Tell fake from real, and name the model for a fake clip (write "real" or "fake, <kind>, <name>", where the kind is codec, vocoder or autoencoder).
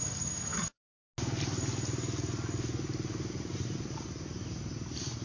real